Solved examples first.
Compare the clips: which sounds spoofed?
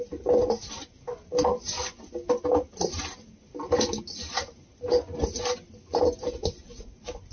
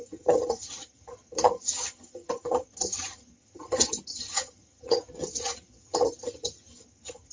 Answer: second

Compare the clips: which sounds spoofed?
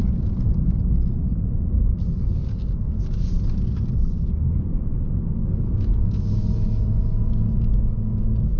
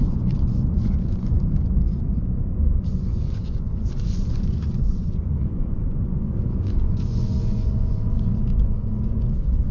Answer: second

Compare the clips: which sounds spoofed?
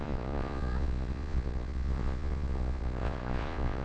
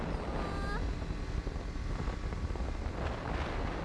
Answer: first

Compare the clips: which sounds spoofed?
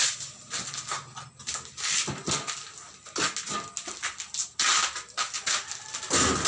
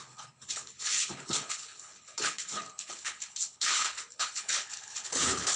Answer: second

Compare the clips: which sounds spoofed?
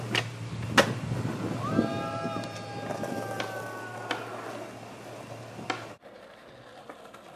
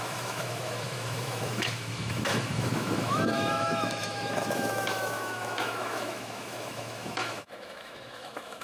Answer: second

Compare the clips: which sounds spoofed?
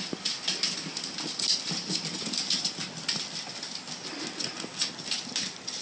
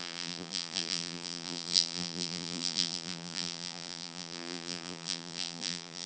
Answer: second